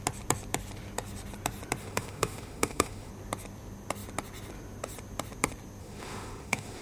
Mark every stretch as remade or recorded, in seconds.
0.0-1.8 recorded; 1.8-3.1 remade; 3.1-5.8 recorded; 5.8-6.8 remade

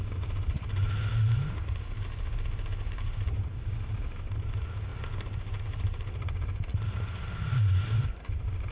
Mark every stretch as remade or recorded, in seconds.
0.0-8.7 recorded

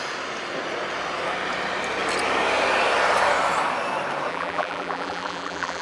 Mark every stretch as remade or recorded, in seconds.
0.0-4.3 recorded; 4.3-5.8 remade

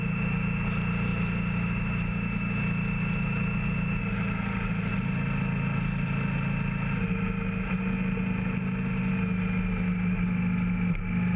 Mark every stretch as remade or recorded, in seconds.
0.0-11.4 recorded